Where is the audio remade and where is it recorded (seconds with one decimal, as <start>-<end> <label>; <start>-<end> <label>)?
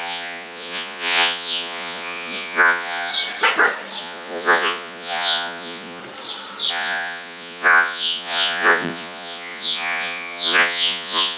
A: 0.0-3.1 remade; 3.1-4.0 recorded; 4.0-6.0 remade; 6.0-6.7 recorded; 6.7-11.4 remade